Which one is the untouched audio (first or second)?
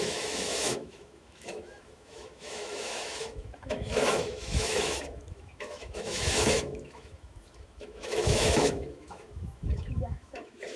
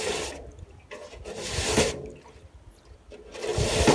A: second